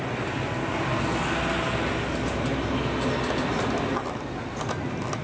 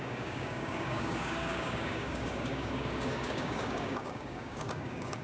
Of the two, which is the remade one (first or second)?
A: second